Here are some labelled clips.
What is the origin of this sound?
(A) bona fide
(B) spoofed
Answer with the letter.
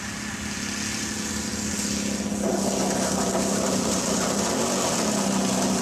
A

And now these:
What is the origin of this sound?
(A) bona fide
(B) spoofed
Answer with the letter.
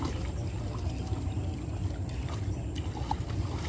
A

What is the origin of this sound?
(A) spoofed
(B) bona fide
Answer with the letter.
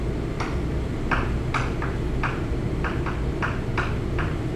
B